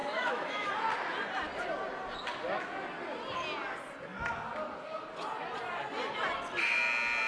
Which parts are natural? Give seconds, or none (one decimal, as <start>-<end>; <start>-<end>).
0.7-7.3